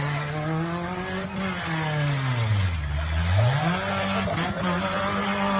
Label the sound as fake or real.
real